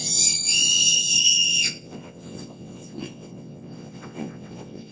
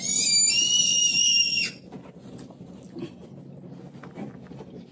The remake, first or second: first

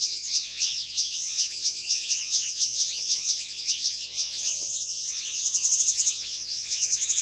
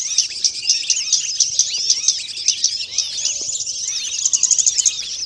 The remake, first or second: first